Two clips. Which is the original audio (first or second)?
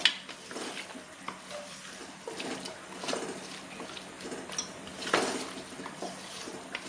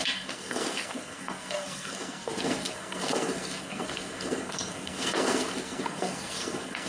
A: first